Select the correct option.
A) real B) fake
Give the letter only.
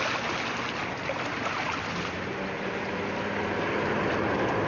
B